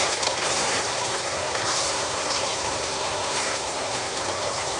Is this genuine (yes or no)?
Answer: no